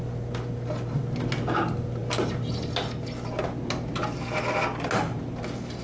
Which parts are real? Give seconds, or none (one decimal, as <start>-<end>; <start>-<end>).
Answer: 0.0-5.8